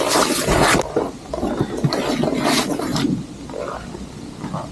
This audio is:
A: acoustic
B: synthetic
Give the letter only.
A